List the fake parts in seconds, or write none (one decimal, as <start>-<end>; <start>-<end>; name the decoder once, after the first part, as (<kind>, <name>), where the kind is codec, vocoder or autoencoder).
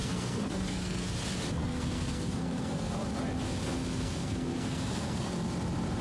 0.0-1.1 (codec, SNAC); 1.6-2.9; 3.6-5.3